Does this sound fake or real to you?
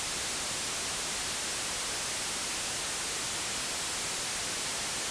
real